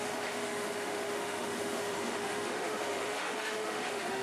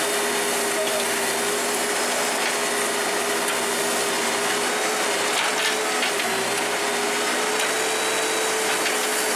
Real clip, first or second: second